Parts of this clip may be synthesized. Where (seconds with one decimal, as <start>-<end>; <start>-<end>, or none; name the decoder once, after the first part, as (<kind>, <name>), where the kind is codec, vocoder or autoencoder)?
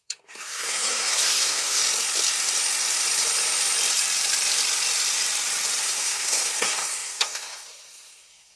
0.0-1.8 (codec, SNAC); 5.8-8.6